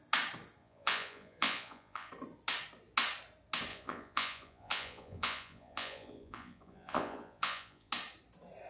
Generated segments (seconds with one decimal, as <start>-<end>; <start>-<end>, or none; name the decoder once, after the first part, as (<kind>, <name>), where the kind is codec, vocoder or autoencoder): 0.6-2.1 (vocoder, Vocos); 3.7-7.9